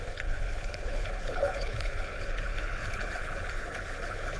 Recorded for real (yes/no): no